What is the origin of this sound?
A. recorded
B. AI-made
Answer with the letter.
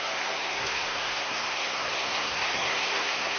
B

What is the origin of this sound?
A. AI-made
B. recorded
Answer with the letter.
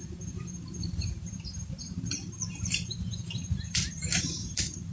A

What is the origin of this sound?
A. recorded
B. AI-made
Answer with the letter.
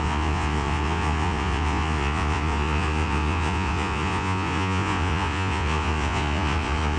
B